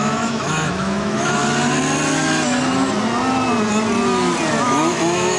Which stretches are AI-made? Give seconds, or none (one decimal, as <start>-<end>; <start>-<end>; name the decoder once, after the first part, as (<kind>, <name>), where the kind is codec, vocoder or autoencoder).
0.0-1.4 (autoencoder, DAC-VAE); 4.6-5.4